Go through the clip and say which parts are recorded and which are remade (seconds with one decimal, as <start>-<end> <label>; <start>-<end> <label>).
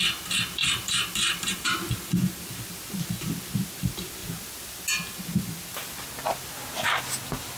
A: 0.0-0.6 recorded; 0.6-2.1 remade; 2.1-7.6 recorded